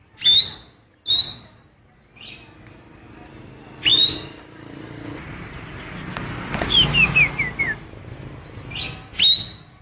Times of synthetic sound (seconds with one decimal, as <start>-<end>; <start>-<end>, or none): none